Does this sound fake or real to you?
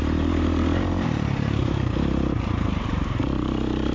fake